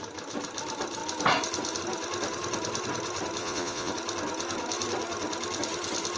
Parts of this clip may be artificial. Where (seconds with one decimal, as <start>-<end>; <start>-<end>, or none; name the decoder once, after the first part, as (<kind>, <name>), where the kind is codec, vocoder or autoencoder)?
3.4-3.9 (vocoder, Vocos)